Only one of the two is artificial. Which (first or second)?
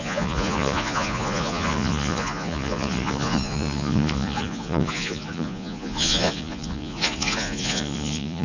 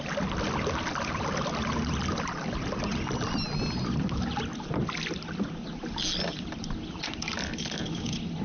first